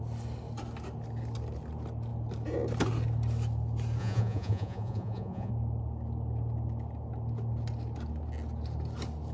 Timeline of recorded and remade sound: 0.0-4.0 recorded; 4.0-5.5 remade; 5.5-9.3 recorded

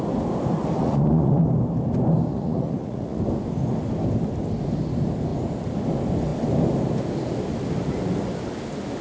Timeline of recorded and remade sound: 0.0-0.8 recorded; 0.8-1.4 remade; 1.4-2.3 recorded; 2.3-3.2 remade; 3.2-9.0 recorded

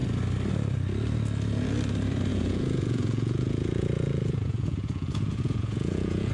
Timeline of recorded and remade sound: 0.0-2.3 recorded; 2.3-6.3 remade

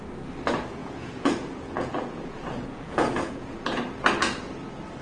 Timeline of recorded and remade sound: 0.0-0.8 recorded; 0.8-3.8 remade; 3.8-5.0 recorded